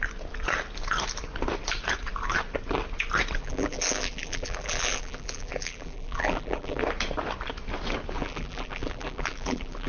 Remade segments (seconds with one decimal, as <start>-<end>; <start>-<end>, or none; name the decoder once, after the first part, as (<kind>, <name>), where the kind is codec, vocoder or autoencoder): 3.4-6.8 (vocoder, BigVGAN v2); 8.2-9.9